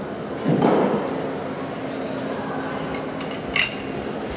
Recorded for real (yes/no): yes